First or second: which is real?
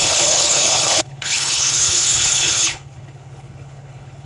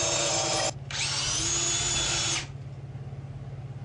second